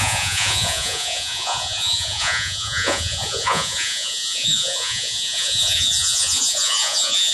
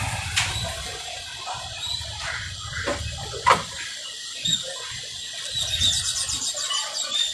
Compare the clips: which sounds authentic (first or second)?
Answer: second